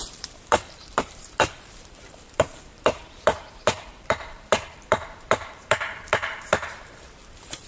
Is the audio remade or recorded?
remade